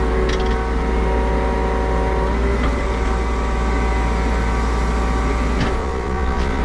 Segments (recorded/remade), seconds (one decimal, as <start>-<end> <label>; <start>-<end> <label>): 0.0-5.8 recorded; 5.8-6.6 remade

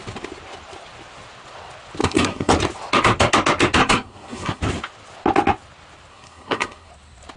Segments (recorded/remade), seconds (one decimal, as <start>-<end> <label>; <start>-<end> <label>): 0.0-2.0 recorded; 2.0-2.5 remade; 2.5-3.8 recorded; 3.8-4.6 remade; 4.6-6.1 recorded; 6.1-6.9 remade; 6.9-7.4 recorded

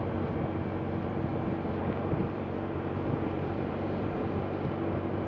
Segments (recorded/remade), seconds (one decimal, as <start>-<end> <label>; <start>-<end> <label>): 0.0-2.2 recorded; 2.2-3.7 remade; 3.7-5.3 recorded

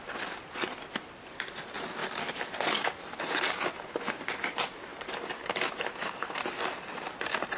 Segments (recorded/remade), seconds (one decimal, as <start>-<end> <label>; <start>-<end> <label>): 0.0-4.9 recorded; 4.9-5.7 remade; 5.7-7.6 recorded